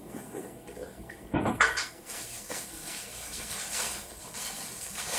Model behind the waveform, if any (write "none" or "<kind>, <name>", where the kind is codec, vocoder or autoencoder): codec, SNAC